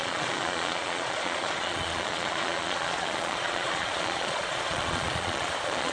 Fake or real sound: fake